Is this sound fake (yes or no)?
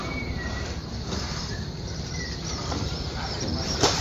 yes